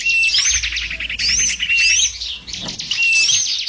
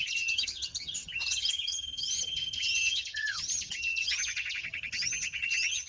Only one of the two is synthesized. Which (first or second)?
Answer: second